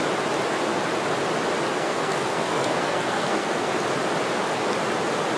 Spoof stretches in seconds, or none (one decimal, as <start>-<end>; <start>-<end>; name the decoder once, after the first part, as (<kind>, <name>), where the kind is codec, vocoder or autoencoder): 1.7-3.7 (codec, SNAC)

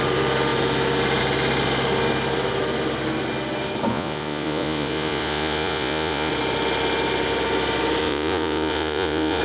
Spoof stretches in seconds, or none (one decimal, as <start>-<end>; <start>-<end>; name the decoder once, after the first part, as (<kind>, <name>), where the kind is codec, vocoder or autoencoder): 3.9-6.3 (vocoder, Vocos); 8.0-9.4

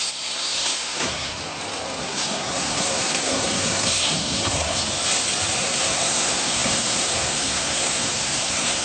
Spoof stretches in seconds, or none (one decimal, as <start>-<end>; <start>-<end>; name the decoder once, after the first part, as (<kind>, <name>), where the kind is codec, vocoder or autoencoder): 0.0-1.4 (codec, SNAC); 2.0-4.8; 5.6-8.8

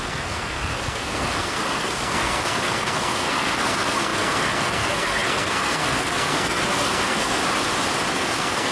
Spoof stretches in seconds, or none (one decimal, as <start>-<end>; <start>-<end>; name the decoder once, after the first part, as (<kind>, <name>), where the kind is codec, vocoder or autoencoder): 0.0-7.4 (codec, SNAC); 8.1-8.7

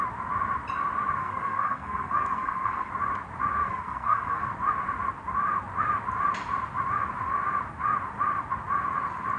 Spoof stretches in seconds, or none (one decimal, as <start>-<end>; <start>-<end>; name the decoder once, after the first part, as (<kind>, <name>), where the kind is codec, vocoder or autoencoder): 1.2-2.9 (codec, SNAC); 3.6-4.5

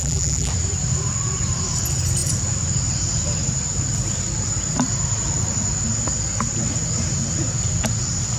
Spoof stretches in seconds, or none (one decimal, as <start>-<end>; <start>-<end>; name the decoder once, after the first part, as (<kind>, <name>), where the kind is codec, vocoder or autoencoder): 0.0-0.5 (vocoder, BigVGAN v2)

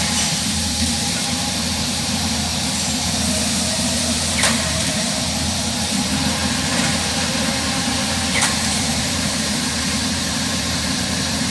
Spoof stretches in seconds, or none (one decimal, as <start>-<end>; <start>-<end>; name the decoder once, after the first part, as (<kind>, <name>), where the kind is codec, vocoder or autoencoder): 0.0-2.5 (vocoder, BigVGAN v2); 4.4-11.5

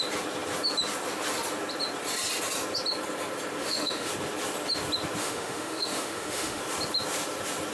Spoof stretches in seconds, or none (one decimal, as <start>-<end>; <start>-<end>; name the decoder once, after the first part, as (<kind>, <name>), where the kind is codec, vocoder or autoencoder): 3.6-4.1 (autoencoder, DAC-VAE); 5.2-6.6